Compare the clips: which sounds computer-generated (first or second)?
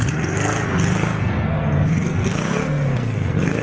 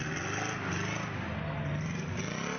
first